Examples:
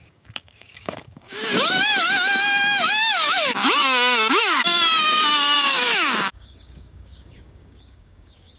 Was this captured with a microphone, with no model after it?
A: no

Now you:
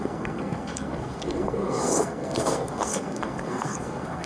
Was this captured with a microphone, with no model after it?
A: no